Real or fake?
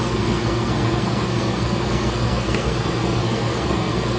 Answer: fake